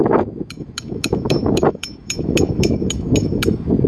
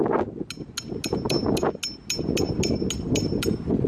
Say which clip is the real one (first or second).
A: second